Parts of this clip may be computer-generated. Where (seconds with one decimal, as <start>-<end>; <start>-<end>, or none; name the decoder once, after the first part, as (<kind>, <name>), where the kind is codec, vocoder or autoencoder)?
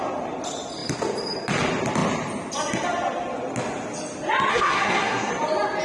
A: 4.5-5.3 (codec, SNAC)